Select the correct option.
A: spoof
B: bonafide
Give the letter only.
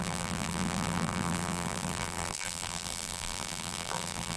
A